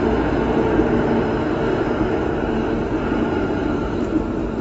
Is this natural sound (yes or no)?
no